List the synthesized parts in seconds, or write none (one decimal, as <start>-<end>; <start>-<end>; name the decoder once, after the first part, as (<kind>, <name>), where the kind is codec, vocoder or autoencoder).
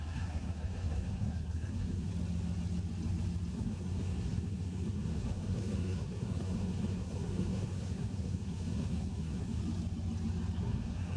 0.0-2.1 (codec, SNAC); 3.5-9.6; 10.6-11.2